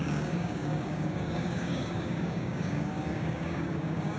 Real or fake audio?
fake